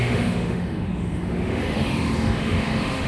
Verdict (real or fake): fake